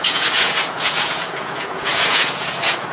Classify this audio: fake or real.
fake